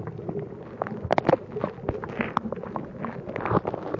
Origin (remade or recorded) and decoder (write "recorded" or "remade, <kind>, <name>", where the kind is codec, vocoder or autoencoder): recorded